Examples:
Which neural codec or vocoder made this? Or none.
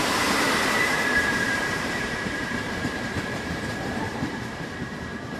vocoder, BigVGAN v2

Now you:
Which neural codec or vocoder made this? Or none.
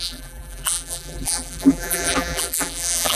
vocoder, BigVGAN v2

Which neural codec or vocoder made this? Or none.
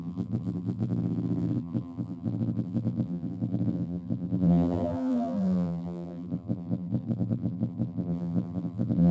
vocoder, BigVGAN v2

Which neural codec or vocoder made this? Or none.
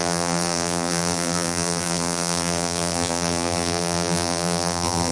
vocoder, BigVGAN v2